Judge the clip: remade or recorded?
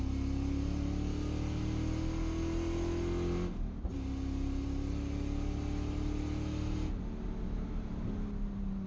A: recorded